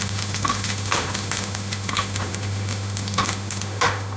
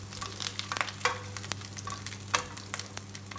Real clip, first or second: second